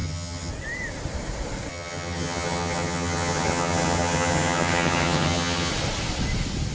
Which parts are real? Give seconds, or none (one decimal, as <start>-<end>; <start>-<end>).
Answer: 0.5-1.7; 5.7-6.7